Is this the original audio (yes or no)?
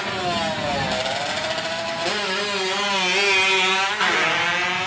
yes